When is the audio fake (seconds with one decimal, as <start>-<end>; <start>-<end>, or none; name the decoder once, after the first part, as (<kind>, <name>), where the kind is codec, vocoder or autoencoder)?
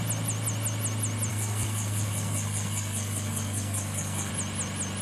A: 1.3-4.3 (codec, SNAC)